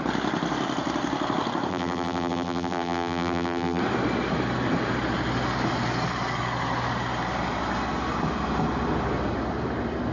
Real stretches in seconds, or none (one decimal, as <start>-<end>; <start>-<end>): 0.0-1.7; 3.8-10.1

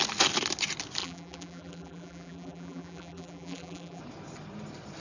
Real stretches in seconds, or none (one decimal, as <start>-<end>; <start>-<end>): 0.0-1.0; 4.0-5.0

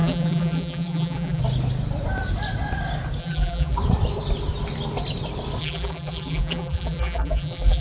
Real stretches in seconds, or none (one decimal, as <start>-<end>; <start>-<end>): 1.4-3.2; 3.8-5.6